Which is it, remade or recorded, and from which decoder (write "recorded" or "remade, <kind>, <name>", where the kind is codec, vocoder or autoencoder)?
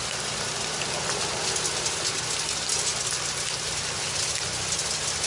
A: recorded